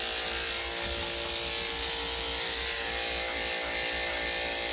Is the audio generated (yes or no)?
no